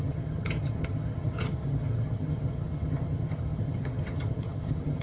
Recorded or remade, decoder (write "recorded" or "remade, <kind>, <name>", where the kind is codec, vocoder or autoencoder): remade, vocoder, HiFi-GAN